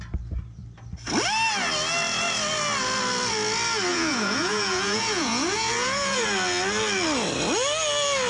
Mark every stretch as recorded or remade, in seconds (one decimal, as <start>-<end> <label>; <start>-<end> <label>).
0.0-3.9 recorded; 3.9-6.2 remade; 6.2-8.3 recorded